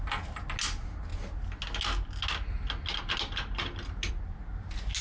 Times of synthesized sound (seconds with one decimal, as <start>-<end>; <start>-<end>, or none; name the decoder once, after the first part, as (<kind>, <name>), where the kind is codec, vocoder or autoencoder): none